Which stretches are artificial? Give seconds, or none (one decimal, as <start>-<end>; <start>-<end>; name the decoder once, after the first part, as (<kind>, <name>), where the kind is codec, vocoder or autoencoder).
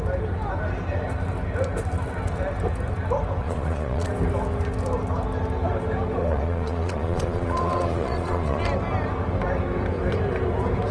3.4-4.1 (vocoder, Vocos); 6.2-8.6